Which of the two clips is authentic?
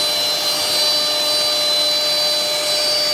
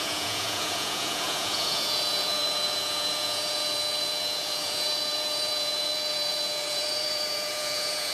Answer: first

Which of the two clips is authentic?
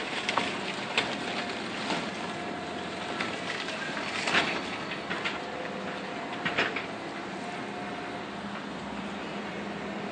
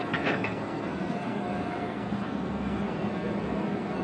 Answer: first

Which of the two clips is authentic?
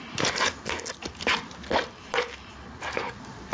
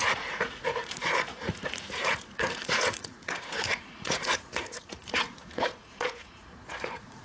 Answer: first